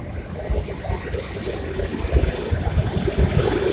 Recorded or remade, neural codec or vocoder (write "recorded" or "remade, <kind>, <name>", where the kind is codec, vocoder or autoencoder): recorded